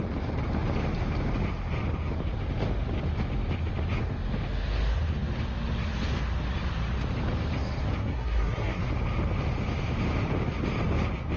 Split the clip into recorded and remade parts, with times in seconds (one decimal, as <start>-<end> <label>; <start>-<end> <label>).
0.0-8.0 recorded; 8.0-8.9 remade; 8.9-11.4 recorded